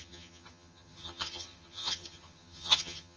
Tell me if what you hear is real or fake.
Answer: fake